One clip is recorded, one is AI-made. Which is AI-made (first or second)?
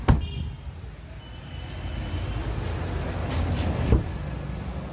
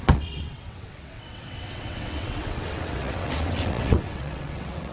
second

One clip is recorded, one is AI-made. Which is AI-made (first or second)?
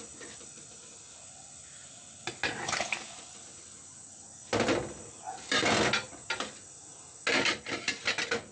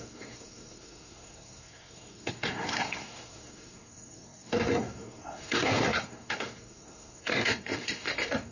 second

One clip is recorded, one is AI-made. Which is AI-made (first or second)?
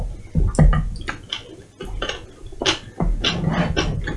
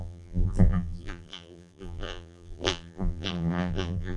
second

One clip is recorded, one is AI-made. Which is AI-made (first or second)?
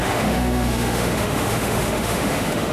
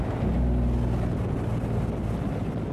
first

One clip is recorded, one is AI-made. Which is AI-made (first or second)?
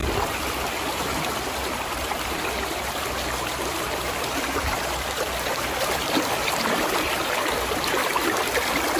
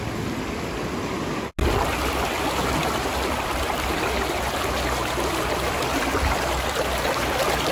first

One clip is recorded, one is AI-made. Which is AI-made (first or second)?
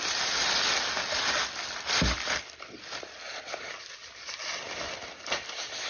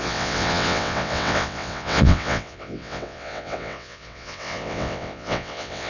second